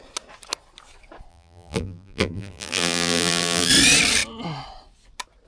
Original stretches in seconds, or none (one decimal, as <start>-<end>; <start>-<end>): 0.0-1.3; 3.7-5.5